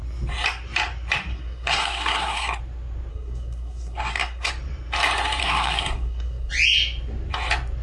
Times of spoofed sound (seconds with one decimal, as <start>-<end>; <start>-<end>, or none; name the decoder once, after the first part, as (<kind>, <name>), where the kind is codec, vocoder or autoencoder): 1.3-2.6 (codec, SNAC); 3.1-4.5; 5.4-6.5